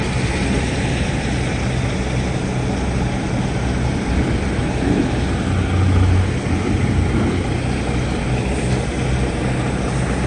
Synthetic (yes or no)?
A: no